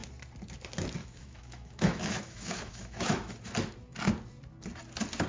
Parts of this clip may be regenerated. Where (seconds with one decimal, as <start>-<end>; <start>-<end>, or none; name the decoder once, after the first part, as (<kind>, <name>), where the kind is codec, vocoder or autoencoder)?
1.0-3.3 (autoencoder, DAC-VAE)